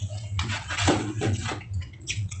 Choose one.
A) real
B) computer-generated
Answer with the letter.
B